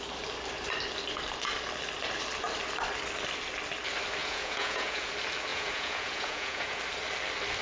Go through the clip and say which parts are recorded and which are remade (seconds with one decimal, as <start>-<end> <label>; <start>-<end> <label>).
0.0-4.2 recorded; 4.2-5.1 remade; 5.1-5.5 recorded; 5.5-6.8 remade; 6.8-7.6 recorded